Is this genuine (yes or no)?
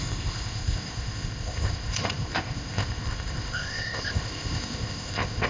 no